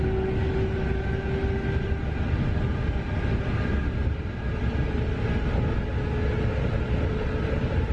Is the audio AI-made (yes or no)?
no